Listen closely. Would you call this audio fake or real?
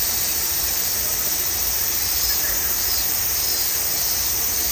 fake